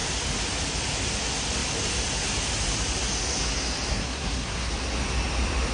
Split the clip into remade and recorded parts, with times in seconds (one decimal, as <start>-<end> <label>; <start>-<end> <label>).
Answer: 0.0-3.9 recorded; 3.9-4.7 remade; 4.7-5.7 recorded